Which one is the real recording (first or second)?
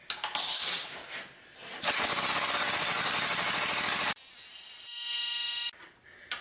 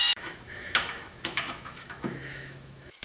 first